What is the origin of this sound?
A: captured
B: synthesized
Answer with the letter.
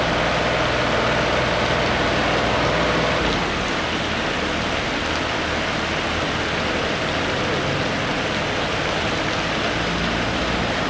A